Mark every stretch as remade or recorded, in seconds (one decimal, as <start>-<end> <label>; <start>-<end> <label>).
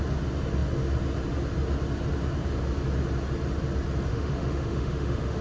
0.0-4.1 recorded; 4.1-5.4 remade